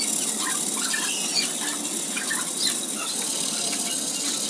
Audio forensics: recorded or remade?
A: recorded